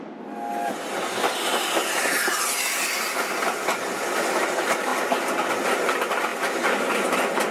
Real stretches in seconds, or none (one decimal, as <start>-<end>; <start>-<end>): 0.0-7.5